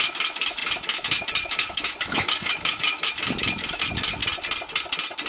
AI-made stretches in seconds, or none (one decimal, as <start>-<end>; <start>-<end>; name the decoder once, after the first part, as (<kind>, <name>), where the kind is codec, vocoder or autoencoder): 0.0-4.2 (autoencoder, DAC-VAE)